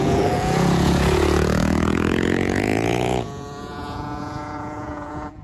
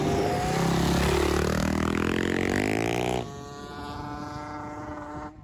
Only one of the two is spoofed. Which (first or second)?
first